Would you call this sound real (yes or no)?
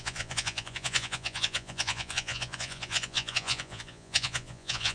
no